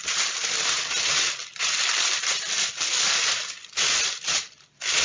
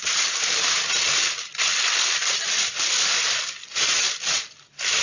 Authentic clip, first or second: second